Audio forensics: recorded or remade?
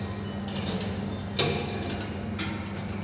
recorded